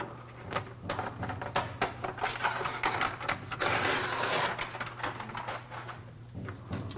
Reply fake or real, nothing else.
real